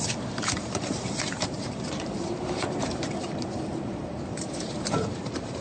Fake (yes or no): yes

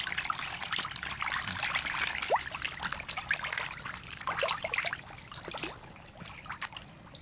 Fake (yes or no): yes